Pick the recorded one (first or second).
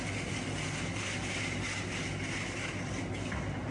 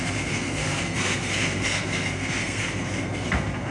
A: first